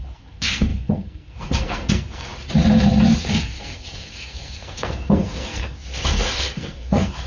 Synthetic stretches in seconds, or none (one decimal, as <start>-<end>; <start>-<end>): 0.0-2.3; 3.2-7.3